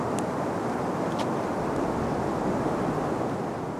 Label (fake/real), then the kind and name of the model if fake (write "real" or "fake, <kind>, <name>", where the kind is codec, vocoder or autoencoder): real